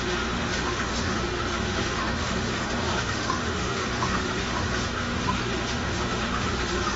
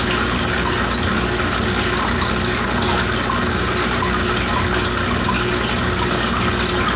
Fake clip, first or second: first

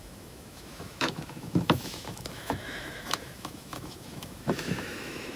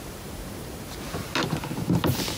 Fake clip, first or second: first